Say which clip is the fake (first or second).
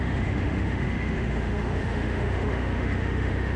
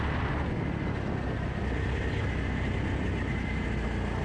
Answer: first